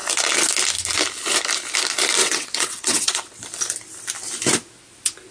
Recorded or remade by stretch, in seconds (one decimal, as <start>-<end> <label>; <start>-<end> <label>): 0.0-2.2 recorded; 2.2-3.4 remade; 3.4-5.3 recorded